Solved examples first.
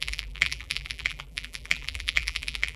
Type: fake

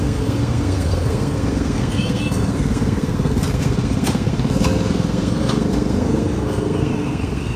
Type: fake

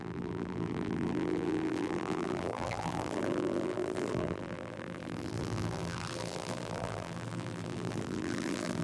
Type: fake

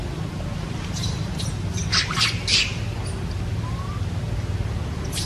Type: fake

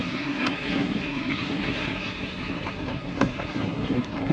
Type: fake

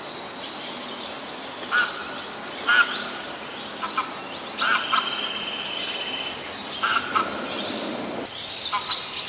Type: real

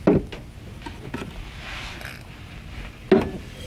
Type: real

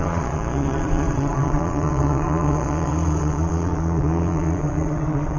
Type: fake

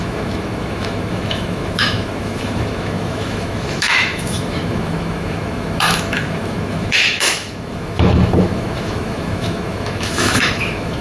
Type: fake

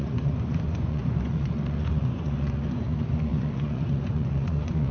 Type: fake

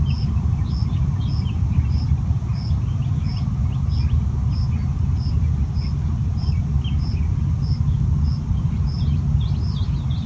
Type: real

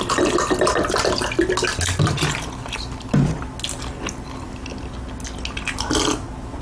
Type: real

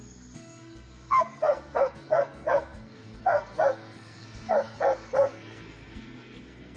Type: fake